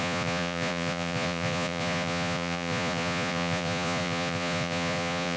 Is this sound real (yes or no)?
no